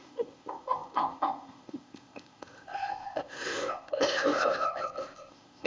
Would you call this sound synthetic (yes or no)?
yes